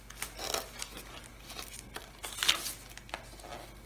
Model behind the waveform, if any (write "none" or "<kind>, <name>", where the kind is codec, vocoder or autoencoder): none